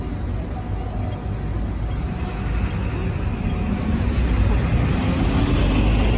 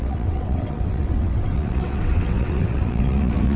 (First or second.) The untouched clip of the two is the first